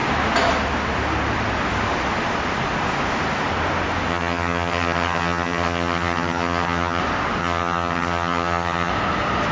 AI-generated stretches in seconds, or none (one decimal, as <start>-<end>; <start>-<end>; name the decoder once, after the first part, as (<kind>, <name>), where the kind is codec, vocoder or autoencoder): 4.1-7.0 (vocoder, HiFi-GAN); 7.4-8.9